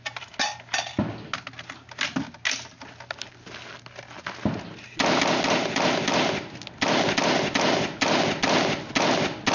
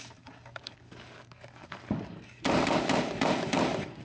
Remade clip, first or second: second